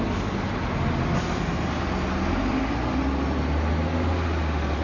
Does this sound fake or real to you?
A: real